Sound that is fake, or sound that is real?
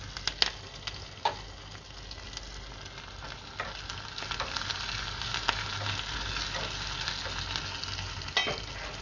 real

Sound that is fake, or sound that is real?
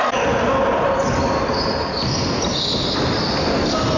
real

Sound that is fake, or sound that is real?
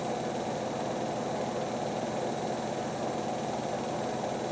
real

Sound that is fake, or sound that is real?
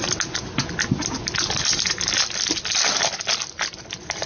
real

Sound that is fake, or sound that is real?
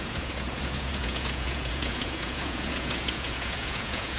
fake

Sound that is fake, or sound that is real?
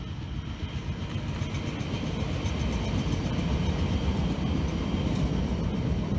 real